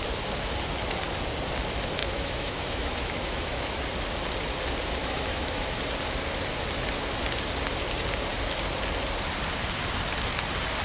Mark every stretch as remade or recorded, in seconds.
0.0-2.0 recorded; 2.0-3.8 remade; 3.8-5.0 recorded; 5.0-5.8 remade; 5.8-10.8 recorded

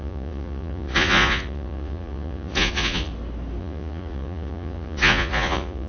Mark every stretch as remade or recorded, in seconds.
0.0-3.1 remade; 3.1-3.6 recorded; 3.6-5.9 remade

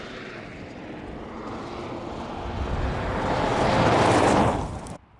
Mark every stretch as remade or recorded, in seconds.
0.0-0.5 remade; 0.5-2.9 recorded; 2.9-3.5 remade; 3.5-4.6 recorded; 4.6-5.2 remade

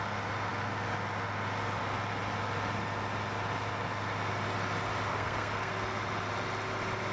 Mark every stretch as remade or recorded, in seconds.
0.0-5.1 recorded; 5.1-5.7 remade; 5.7-7.1 recorded

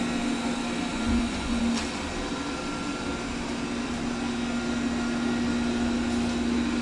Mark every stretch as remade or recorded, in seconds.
0.0-0.9 recorded; 0.9-1.6 remade; 1.6-6.8 recorded

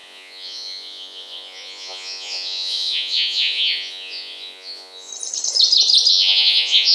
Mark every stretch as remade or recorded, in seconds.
0.0-5.1 remade; 5.1-6.1 recorded; 6.1-6.9 remade